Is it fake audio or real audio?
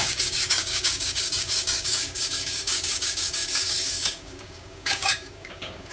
fake